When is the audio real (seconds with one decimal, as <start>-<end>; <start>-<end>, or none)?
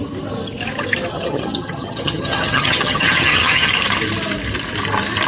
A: 0.0-1.1; 3.7-5.3